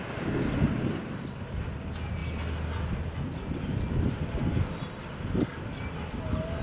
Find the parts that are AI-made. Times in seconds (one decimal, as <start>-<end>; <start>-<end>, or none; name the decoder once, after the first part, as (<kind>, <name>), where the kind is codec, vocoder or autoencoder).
none

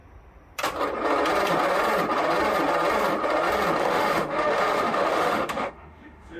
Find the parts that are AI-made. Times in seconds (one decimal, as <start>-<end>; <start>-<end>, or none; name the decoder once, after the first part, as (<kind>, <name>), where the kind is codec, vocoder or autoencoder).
3.8-6.4 (autoencoder, DAC-VAE)

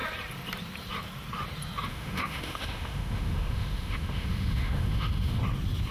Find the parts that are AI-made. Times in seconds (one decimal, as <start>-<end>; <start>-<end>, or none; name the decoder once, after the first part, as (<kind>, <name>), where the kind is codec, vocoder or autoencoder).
1.9-5.4 (autoencoder, DAC-VAE)

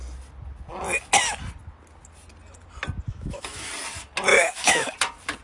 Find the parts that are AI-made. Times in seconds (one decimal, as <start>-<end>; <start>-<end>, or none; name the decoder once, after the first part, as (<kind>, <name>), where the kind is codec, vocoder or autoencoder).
3.1-3.7 (autoencoder, DAC-VAE); 4.3-4.9

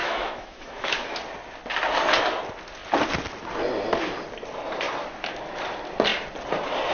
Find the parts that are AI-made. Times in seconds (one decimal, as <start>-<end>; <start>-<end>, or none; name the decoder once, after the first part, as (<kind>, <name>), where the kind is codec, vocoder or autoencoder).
0.0-1.2 (autoencoder, DAC-VAE)

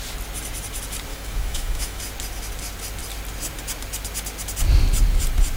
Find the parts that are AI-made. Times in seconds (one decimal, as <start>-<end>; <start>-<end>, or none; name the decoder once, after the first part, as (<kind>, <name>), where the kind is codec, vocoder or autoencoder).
1.1-2.0 (autoencoder, DAC-VAE)